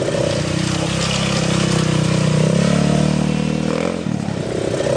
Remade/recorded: recorded